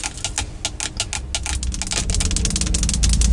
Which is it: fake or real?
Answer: real